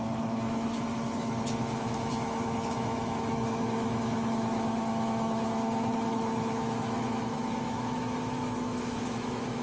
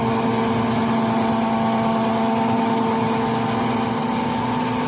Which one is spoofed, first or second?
first